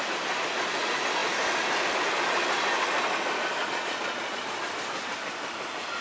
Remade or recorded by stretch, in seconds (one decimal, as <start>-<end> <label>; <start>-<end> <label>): 0.0-3.6 recorded; 3.6-4.4 remade; 4.4-6.0 recorded